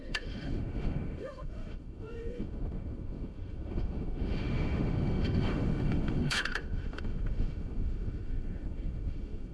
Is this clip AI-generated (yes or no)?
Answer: yes